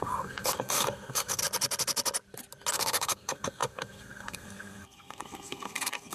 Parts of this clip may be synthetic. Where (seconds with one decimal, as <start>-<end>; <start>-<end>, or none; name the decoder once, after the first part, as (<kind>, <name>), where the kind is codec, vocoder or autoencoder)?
0.0-1.4 (codec, SNAC); 2.7-6.1